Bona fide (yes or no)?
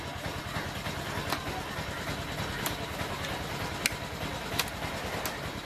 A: yes